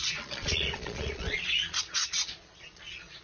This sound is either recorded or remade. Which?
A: remade